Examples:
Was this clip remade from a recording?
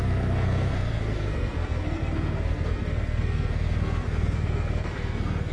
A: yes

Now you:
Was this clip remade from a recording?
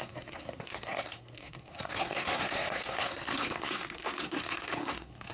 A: yes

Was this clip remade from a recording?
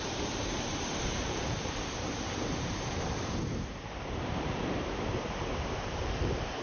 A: yes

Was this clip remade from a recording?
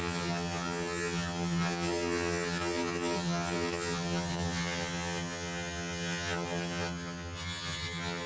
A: yes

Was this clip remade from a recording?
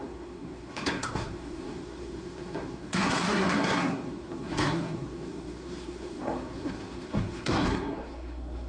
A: yes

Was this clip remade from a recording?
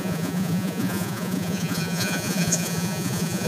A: yes